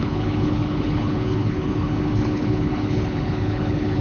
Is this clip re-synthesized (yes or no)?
yes